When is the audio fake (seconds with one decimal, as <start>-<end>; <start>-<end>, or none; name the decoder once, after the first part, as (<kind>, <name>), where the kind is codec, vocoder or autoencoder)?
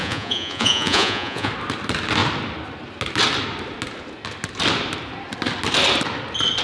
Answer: 0.0-1.5 (vocoder, Vocos)